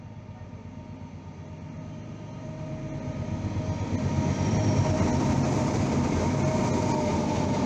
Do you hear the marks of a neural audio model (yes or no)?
no